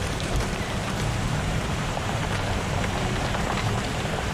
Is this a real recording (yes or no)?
no